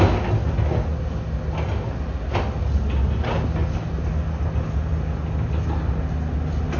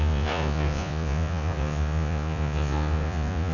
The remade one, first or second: second